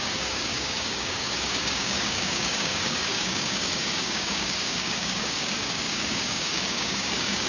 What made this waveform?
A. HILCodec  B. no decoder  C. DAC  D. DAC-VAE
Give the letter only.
C